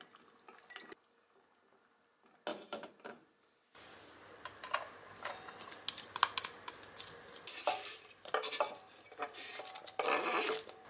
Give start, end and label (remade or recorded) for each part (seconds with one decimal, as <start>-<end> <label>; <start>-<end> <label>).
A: 0.0-10.9 recorded